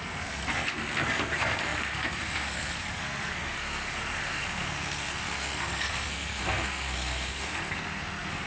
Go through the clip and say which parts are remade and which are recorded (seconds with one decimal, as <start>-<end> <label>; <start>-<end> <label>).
0.0-8.5 remade